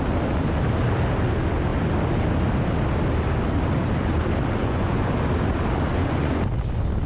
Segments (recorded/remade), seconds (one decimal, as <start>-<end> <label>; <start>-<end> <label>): 0.0-4.6 recorded; 4.6-5.1 remade; 5.1-5.9 recorded; 5.9-6.4 remade; 6.4-7.1 recorded